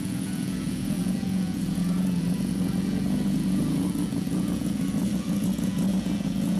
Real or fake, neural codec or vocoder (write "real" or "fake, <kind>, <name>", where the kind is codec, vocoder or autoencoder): fake, vocoder, Vocos